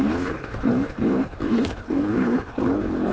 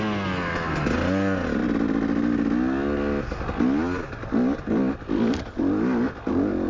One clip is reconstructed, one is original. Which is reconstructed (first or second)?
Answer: first